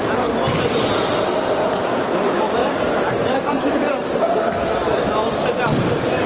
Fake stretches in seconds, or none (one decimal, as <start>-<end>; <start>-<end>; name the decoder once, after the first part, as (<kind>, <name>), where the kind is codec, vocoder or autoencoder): none

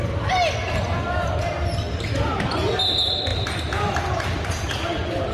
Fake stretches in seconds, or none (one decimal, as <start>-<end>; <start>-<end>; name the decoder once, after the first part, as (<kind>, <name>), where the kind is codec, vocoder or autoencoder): none

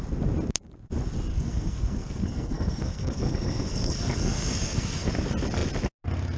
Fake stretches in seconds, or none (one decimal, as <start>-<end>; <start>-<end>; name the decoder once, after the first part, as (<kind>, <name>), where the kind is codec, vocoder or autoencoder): 1.3-5.1 (codec, SNAC)

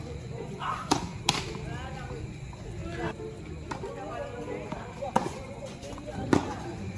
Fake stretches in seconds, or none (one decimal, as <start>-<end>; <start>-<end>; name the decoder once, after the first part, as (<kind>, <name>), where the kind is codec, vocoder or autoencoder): 0.0-1.1 (vocoder, Vocos); 2.3-2.8; 5.0-7.0

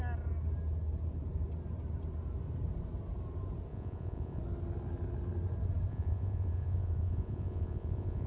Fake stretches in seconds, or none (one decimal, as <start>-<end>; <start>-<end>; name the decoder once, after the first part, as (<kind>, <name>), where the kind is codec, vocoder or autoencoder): 3.7-4.4 (vocoder, Vocos); 5.9-8.3